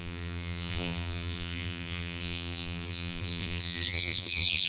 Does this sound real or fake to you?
fake